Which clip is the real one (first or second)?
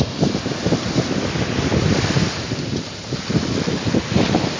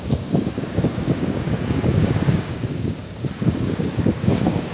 first